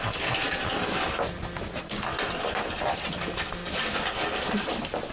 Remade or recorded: recorded